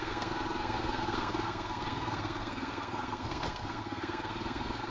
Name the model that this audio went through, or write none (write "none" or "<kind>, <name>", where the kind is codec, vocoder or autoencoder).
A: codec, SNAC